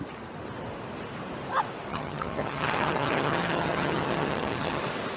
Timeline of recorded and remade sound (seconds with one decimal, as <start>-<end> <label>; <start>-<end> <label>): 0.0-1.9 recorded; 1.9-4.8 remade; 4.8-5.2 recorded